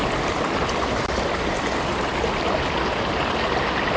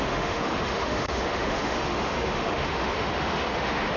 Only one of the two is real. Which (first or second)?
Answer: first